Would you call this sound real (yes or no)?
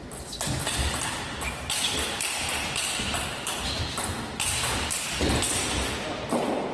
yes